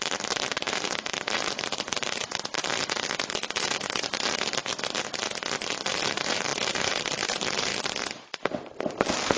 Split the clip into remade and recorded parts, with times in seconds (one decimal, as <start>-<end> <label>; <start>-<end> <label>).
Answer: 0.0-4.6 remade; 4.6-5.9 recorded; 5.9-9.4 remade